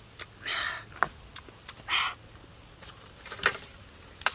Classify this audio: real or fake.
real